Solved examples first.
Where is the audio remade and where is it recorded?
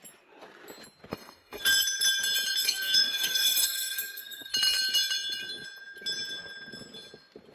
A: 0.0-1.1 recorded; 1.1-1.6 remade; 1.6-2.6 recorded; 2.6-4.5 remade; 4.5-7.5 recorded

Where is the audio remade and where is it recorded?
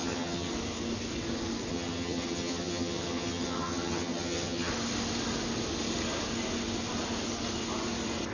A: 0.0-0.5 remade; 0.5-1.7 recorded; 1.7-4.7 remade; 4.7-8.3 recorded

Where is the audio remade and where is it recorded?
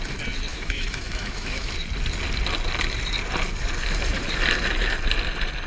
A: 0.0-0.5 recorded; 0.5-1.7 remade; 1.7-5.7 recorded